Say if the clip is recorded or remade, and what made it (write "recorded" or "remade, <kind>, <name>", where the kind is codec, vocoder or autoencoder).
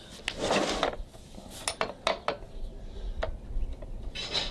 recorded